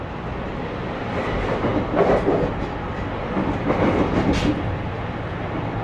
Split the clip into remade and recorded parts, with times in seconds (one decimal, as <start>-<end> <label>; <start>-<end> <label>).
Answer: 0.0-5.8 recorded